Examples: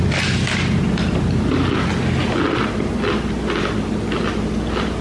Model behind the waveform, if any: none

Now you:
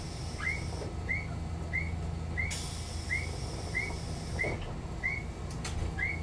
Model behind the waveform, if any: none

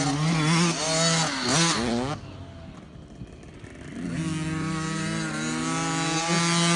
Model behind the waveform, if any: none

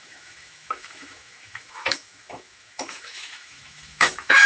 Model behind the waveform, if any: autoencoder, DAC-VAE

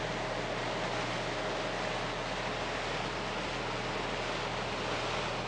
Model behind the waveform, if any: none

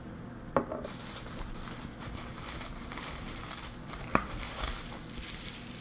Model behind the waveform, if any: none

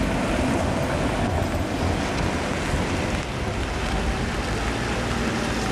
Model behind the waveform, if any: none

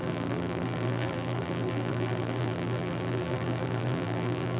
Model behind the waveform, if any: vocoder, BigVGAN v2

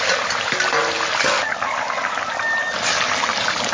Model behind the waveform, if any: none